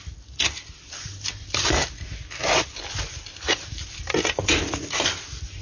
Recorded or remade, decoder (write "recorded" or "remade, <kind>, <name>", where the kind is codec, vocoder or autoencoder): recorded